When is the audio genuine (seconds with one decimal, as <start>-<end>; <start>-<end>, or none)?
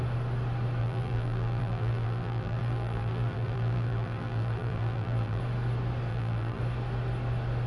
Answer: 0.0-0.8; 5.4-6.1; 6.6-7.7